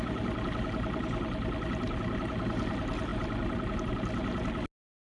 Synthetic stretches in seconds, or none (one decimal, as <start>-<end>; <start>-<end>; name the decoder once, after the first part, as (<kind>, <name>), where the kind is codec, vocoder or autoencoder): none

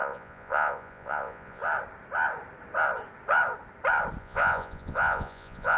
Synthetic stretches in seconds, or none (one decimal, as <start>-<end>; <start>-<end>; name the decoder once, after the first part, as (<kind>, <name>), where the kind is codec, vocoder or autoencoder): 0.0-1.6 (vocoder, Vocos); 4.2-5.8

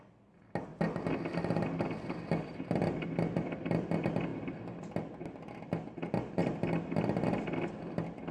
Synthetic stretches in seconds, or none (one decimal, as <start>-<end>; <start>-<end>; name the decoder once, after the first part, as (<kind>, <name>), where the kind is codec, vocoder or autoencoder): none

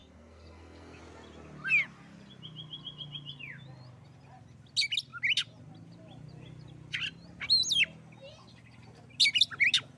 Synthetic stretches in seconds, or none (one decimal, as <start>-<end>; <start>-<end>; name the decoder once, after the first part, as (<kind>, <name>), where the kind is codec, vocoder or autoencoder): 0.0-1.0 (codec, SNAC)

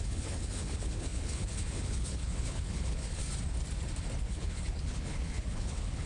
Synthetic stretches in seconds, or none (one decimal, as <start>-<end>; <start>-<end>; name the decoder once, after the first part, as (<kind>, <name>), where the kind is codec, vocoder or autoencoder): 0.0-3.2 (codec, HILCodec); 4.2-6.1

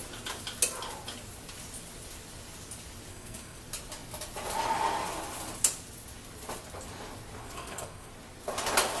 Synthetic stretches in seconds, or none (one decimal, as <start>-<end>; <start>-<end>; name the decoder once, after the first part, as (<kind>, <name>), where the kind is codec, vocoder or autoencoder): 3.1-3.6 (codec, SNAC); 7.4-8.1

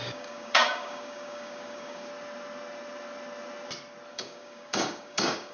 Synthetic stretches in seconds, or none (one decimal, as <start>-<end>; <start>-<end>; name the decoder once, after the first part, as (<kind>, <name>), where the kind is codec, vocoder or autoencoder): 0.0-2.1 (codec, DAC); 4.1-5.5

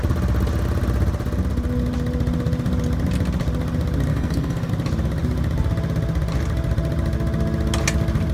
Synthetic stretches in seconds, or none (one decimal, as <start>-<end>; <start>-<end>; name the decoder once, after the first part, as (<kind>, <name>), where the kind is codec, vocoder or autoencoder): 4.1-4.7 (codec, SNAC)